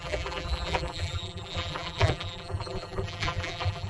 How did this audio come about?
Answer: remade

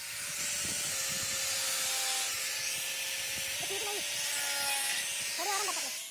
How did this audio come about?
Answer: recorded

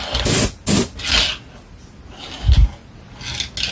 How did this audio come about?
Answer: recorded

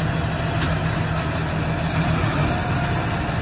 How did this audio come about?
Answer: recorded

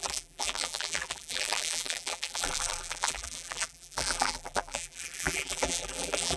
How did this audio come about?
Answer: remade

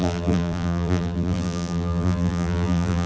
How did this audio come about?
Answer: remade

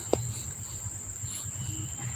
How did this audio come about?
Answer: recorded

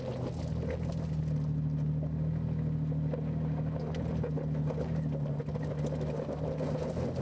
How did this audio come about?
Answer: recorded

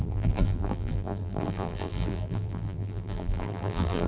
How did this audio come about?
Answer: remade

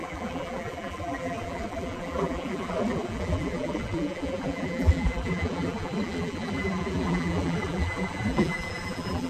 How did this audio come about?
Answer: remade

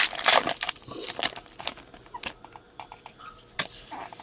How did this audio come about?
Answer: recorded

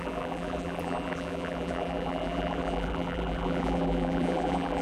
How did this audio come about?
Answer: remade